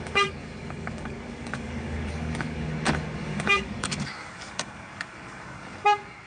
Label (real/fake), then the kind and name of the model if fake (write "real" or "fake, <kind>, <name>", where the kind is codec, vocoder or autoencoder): fake, codec, DAC